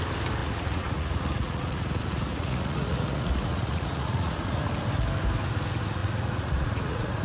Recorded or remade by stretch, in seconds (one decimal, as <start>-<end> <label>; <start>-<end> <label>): 0.0-0.4 recorded; 0.4-4.7 remade; 4.7-6.0 recorded; 6.0-7.2 remade